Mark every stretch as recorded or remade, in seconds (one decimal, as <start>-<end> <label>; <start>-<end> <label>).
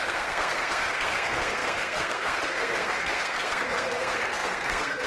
0.0-5.1 remade